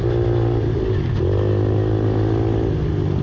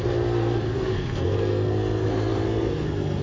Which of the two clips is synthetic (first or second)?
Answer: second